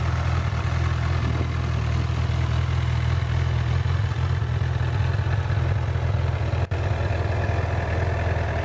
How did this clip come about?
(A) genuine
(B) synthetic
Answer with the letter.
A